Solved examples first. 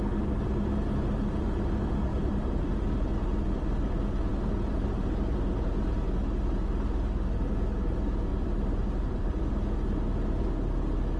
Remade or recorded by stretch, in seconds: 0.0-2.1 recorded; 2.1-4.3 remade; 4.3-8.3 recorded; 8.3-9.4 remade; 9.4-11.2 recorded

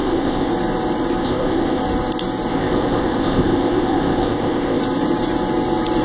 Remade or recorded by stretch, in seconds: 0.0-0.5 remade; 0.5-1.2 recorded; 1.2-1.8 remade; 1.8-2.5 recorded; 2.5-4.8 remade; 4.8-6.0 recorded

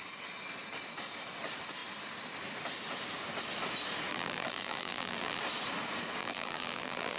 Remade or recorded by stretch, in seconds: 0.0-4.1 recorded; 4.1-5.4 remade; 5.4-6.2 recorded; 6.2-7.2 remade

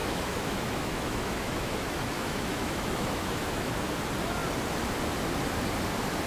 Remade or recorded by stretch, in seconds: 0.0-3.7 remade; 3.7-6.3 recorded

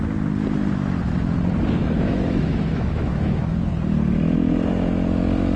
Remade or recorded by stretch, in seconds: 0.0-1.8 recorded; 1.8-3.7 remade; 3.7-5.6 recorded

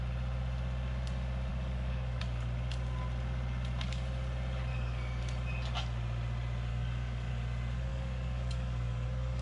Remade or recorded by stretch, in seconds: 0.0-1.5 recorded; 1.5-2.2 remade; 2.2-4.7 recorded; 4.7-5.2 remade; 5.2-6.7 recorded; 6.7-7.3 remade; 7.3-7.9 recorded; 7.9-9.4 remade

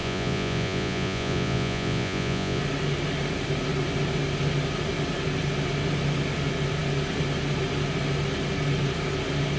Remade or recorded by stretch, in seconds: 0.0-2.6 remade; 2.6-9.6 recorded